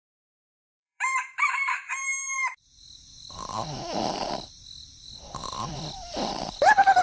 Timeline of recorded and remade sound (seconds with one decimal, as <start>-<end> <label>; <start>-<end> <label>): 0.0-7.0 remade